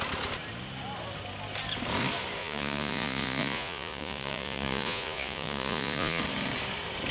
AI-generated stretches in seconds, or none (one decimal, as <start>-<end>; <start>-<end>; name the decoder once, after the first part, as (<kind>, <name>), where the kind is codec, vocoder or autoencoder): 2.4-6.2 (vocoder, Vocos)